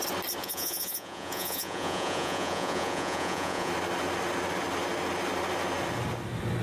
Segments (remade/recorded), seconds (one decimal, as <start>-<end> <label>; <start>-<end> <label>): 0.0-0.4 recorded; 0.4-3.7 remade; 3.7-6.6 recorded

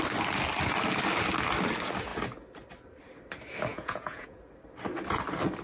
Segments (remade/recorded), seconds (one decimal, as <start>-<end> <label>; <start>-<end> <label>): 0.0-3.7 recorded; 3.7-4.4 remade; 4.4-5.6 recorded

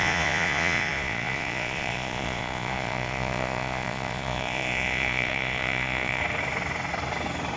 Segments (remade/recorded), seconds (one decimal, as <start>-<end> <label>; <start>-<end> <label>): 0.0-6.2 remade; 6.2-7.6 recorded

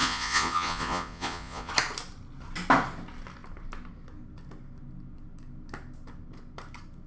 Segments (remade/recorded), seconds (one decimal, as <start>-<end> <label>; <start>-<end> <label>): 0.0-1.7 remade; 1.7-7.1 recorded

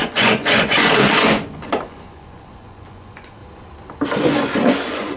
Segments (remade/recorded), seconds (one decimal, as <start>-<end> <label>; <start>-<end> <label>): 0.0-3.4 remade; 3.4-4.2 recorded; 4.2-5.2 remade